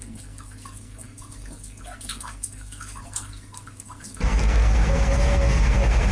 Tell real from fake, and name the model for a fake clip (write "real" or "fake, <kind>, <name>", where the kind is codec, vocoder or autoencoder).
fake, codec, SNAC